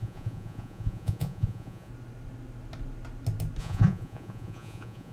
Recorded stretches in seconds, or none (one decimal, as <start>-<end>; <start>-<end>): 1.9-3.6